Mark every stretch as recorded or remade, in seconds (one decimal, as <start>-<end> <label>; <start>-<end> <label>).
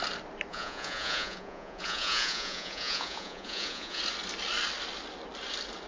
0.0-0.5 recorded; 0.5-4.0 remade; 4.0-5.9 recorded